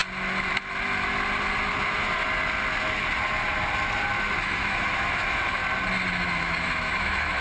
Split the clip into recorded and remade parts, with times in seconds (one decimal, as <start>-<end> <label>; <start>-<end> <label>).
0.0-4.4 recorded; 4.4-5.6 remade; 5.6-6.1 recorded; 6.1-7.4 remade